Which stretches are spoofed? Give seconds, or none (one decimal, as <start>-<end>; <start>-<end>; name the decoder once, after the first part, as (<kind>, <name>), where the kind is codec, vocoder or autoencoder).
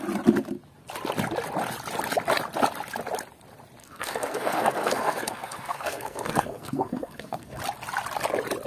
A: 3.8-7.6 (codec, SNAC)